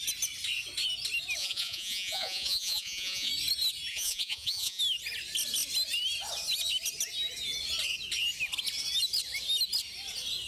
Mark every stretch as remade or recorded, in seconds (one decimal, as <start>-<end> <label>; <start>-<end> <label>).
0.0-1.4 recorded; 1.4-3.3 remade; 3.3-3.9 recorded; 3.9-4.8 remade; 4.8-10.5 recorded